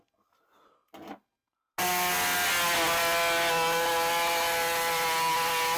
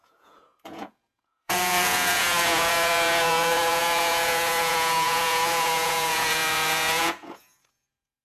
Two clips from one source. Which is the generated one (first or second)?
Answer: second